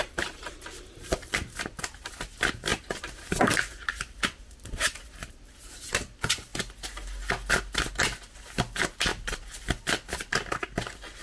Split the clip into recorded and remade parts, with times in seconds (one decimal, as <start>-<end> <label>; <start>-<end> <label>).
0.0-1.3 remade; 1.3-11.2 recorded